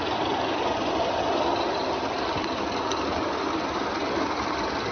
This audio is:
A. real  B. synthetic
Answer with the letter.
A